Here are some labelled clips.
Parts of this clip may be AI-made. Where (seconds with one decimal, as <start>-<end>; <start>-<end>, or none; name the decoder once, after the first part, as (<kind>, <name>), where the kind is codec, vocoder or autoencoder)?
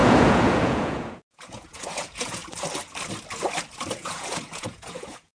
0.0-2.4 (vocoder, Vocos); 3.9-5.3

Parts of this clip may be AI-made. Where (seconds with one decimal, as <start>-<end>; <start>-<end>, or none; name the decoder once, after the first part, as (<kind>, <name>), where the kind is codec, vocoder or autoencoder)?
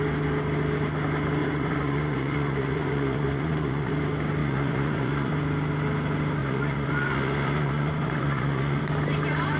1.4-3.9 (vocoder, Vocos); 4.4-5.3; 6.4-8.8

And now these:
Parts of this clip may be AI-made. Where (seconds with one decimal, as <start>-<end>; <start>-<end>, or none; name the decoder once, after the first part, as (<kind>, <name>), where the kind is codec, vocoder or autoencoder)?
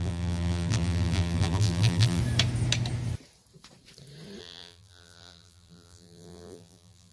0.0-2.2 (vocoder, BigVGAN v2); 4.4-7.1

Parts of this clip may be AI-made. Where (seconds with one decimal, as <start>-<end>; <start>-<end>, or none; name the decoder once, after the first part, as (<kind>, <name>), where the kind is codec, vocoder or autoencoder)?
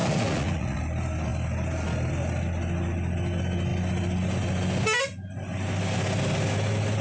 0.0-0.8 (vocoder, Vocos)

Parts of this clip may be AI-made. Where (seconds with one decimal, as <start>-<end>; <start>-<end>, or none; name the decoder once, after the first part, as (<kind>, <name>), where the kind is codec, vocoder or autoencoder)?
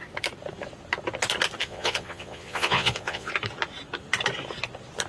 1.6-3.3 (vocoder, Vocos)